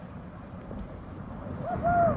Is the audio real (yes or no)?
no